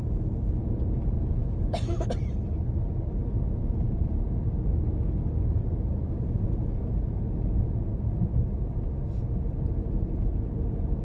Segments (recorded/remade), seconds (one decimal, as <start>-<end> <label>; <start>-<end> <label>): 0.0-1.4 recorded; 1.4-2.1 remade; 2.1-11.0 recorded